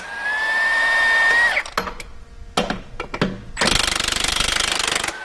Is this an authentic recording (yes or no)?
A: yes